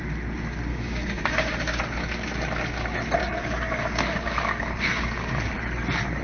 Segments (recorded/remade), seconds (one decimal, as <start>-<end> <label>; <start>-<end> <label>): 0.0-0.7 recorded; 0.7-1.8 remade; 1.8-3.2 recorded; 3.2-5.3 remade; 5.3-6.2 recorded